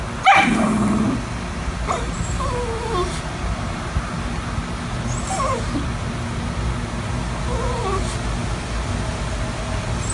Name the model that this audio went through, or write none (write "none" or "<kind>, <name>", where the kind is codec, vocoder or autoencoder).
none